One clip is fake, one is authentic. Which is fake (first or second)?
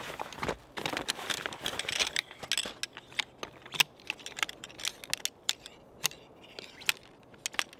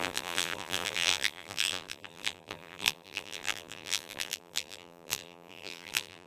second